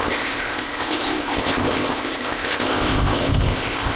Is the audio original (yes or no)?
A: no